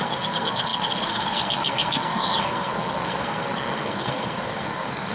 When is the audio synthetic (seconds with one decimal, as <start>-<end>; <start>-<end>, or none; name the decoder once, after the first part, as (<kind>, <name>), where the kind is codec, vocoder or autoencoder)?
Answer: 0.0-5.1 (codec, SNAC)